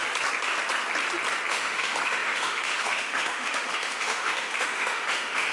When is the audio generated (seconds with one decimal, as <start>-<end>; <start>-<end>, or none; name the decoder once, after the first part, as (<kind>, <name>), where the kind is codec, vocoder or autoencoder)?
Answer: 1.5-5.5 (autoencoder, DAC-VAE)